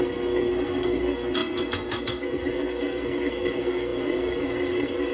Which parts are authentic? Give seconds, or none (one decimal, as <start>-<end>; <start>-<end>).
none